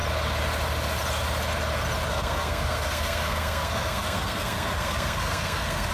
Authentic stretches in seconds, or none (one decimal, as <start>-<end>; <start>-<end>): 0.0-2.1